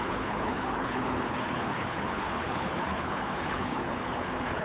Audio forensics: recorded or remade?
remade